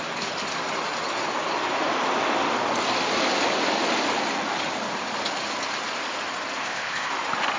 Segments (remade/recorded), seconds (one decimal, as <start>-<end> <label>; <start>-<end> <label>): 0.0-6.6 recorded; 6.6-7.1 remade; 7.1-7.6 recorded